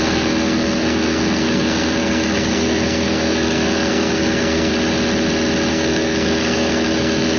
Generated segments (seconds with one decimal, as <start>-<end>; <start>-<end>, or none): 0.0-4.7; 5.7-7.4